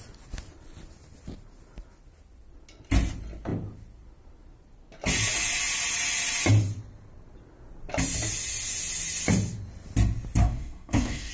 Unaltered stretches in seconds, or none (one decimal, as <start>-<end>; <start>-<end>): 0.0-10.4